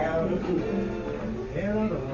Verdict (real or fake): real